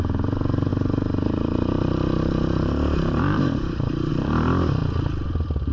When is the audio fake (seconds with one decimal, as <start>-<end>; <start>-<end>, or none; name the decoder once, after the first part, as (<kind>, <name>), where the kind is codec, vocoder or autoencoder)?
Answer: 0.7-4.1 (vocoder, BigVGAN v2)